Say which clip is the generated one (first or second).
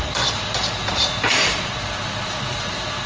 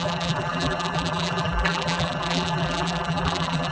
second